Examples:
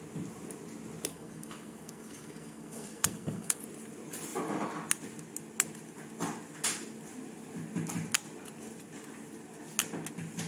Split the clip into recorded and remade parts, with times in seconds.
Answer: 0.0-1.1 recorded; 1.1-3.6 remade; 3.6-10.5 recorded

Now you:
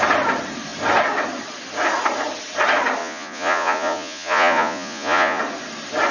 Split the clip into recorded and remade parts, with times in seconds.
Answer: 0.0-3.0 recorded; 3.0-5.4 remade; 5.4-6.1 recorded

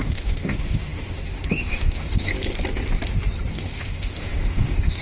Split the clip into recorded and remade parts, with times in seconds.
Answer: 0.0-2.3 remade; 2.3-3.5 recorded; 3.5-5.0 remade

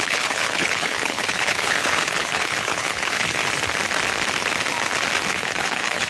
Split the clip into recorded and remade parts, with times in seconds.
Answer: 0.0-3.4 remade; 3.4-5.3 recorded; 5.3-6.1 remade

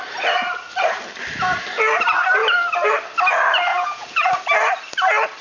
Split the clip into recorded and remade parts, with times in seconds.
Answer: 0.0-3.7 recorded; 3.7-4.3 remade; 4.3-5.4 recorded

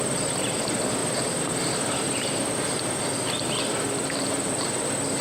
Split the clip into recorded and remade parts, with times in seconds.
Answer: 0.0-1.0 recorded; 1.0-2.7 remade; 2.7-5.2 recorded

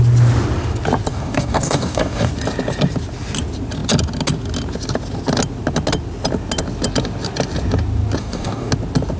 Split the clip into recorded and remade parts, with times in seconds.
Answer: 0.0-1.1 recorded; 1.1-2.3 remade; 2.3-8.2 recorded; 8.2-8.7 remade; 8.7-9.2 recorded